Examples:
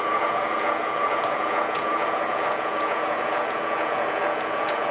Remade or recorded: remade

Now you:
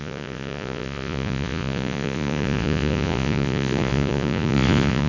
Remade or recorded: remade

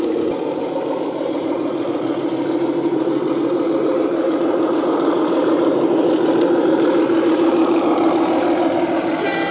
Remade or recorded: remade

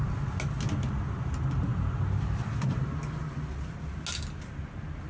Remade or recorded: recorded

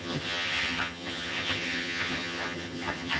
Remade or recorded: remade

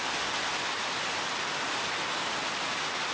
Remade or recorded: recorded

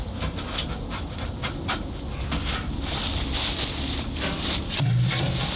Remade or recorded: recorded